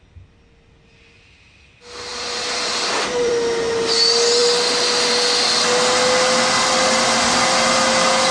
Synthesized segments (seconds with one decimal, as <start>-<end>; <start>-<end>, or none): 2.1-3.3